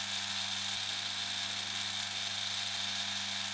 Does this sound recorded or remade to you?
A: recorded